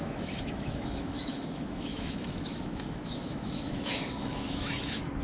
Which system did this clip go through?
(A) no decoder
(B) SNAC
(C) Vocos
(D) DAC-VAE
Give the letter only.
D